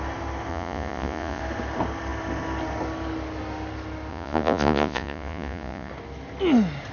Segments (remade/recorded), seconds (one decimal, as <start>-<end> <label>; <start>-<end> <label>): 0.0-0.5 recorded; 0.5-1.4 remade; 1.4-4.1 recorded; 4.1-5.9 remade; 5.9-6.9 recorded